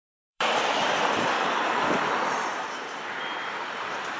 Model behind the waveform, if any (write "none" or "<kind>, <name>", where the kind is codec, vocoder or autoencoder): vocoder, BigVGAN v2